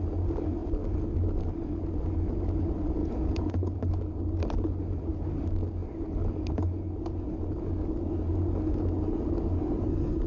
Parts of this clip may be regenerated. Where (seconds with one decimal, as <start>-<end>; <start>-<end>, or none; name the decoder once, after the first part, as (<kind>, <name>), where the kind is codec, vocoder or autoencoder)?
3.0-3.8 (vocoder, Vocos)